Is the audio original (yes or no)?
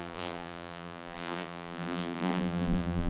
no